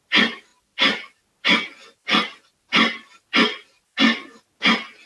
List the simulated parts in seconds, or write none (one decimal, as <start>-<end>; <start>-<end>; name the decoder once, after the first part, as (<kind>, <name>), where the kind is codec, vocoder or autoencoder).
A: none